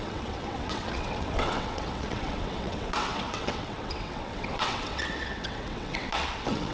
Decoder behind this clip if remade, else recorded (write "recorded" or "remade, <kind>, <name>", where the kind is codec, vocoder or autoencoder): remade, vocoder, WaveNeXt